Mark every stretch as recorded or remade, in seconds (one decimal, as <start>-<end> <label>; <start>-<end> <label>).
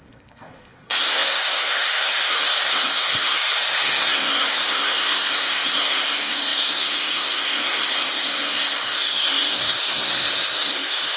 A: 0.0-11.2 remade